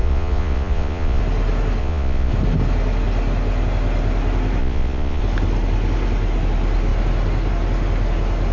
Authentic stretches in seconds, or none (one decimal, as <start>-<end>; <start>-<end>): 1.2-1.8; 2.3-4.6; 5.2-8.5